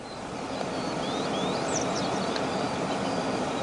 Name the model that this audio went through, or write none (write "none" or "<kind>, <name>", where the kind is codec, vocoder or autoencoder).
none